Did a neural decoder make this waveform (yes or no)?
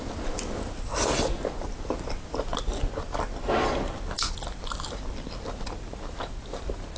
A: no